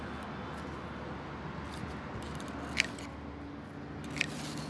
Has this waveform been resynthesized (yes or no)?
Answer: no